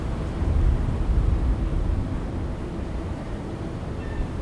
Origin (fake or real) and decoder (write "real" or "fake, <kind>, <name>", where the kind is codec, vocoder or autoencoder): real